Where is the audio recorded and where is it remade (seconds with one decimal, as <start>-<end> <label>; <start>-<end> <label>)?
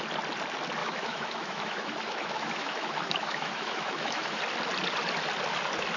0.0-0.8 recorded; 0.8-4.4 remade; 4.4-6.0 recorded